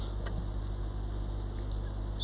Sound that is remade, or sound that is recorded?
recorded